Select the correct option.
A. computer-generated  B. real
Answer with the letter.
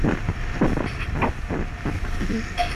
B